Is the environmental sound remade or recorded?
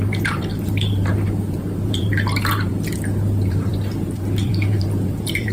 remade